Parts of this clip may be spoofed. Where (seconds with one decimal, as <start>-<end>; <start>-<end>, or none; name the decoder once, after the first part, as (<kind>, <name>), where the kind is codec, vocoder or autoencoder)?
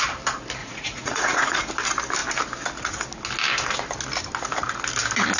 0.6-1.7 (vocoder, Vocos)